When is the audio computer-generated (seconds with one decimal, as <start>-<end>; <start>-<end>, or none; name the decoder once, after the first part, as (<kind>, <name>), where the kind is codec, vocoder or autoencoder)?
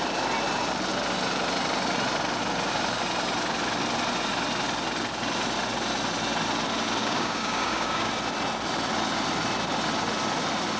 7.0-8.1 (codec, DAC)